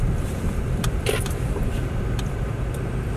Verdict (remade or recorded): remade